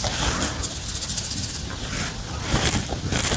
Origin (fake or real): real